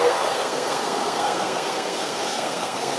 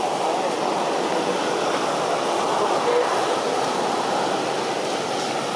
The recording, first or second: second